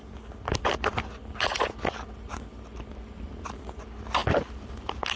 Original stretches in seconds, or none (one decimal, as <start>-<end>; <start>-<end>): 0.0-5.2